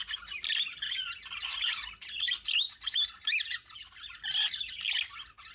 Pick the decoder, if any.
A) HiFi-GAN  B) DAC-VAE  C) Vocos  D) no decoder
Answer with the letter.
D